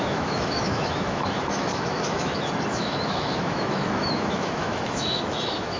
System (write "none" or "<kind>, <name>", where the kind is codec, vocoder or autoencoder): autoencoder, DAC-VAE